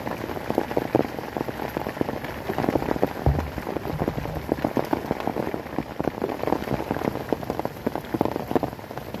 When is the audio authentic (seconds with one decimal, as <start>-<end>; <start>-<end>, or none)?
0.0-9.2